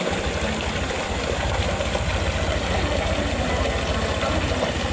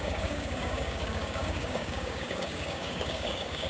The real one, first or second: first